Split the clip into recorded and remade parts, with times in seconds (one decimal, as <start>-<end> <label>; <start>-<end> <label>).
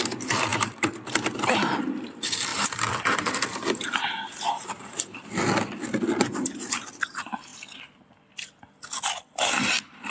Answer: 0.0-7.5 remade; 7.5-9.3 recorded; 9.3-10.1 remade